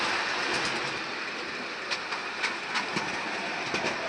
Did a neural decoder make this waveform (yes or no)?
no